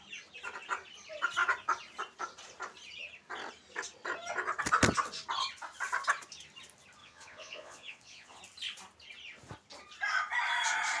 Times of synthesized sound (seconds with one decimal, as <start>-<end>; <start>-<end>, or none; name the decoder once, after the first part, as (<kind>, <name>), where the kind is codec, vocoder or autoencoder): 7.0-8.4 (vocoder, Vocos)